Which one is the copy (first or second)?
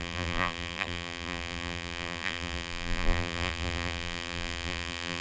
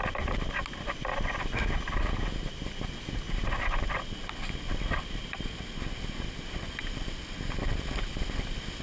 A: first